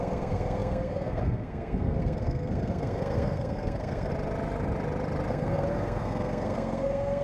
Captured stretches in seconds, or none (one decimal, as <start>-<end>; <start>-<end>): 4.1-5.3